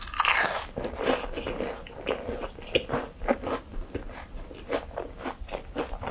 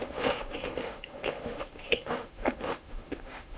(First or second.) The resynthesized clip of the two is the second